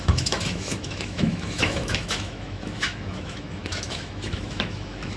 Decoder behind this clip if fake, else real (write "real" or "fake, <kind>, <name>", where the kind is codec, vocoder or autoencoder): fake, autoencoder, DAC-VAE